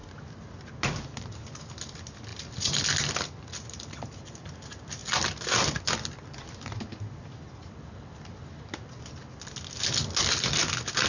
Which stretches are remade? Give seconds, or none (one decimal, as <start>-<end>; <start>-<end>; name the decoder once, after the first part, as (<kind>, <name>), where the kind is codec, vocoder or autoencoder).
none